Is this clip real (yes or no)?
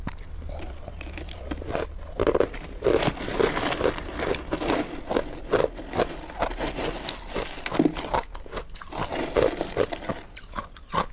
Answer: yes